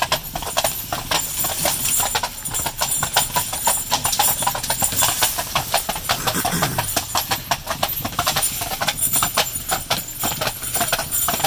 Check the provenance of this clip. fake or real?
fake